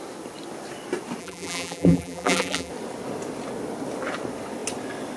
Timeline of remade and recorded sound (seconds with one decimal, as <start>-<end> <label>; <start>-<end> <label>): 0.0-1.2 recorded; 1.2-2.7 remade; 2.7-5.2 recorded